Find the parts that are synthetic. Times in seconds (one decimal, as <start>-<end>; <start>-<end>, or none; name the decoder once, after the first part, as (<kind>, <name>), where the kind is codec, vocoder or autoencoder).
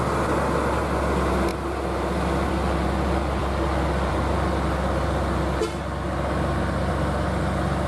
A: none